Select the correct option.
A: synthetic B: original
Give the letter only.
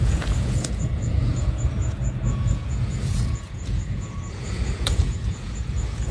A